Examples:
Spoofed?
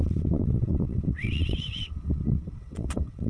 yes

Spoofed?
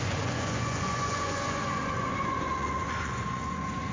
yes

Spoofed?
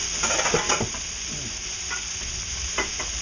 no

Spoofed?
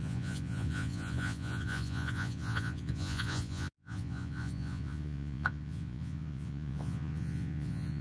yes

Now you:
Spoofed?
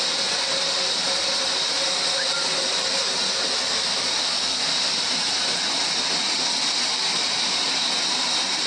no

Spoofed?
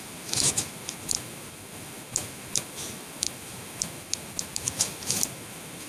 yes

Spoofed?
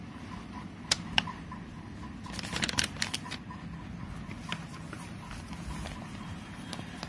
no